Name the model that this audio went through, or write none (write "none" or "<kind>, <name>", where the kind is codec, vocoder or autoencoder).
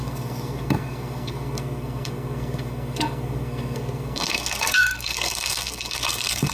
codec, SNAC